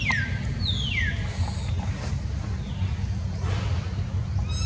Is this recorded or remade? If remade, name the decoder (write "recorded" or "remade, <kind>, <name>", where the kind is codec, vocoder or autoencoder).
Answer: recorded